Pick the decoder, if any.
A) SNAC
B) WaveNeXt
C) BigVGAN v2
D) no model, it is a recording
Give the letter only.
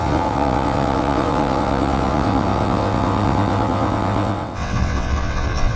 B